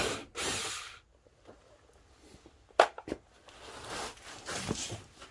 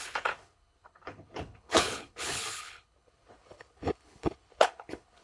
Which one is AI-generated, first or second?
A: second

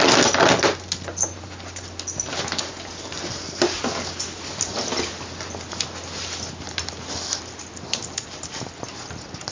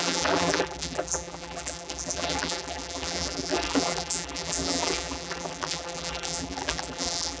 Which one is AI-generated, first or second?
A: second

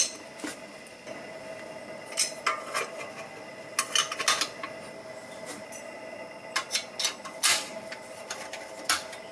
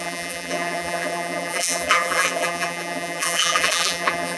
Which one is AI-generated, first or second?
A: second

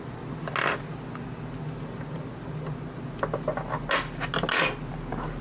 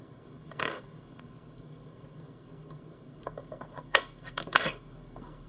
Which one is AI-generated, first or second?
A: second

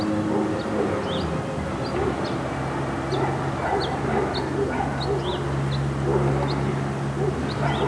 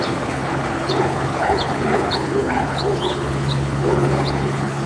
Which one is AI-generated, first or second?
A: second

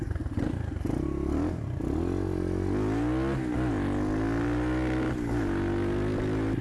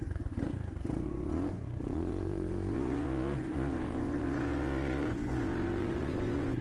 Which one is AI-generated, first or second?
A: second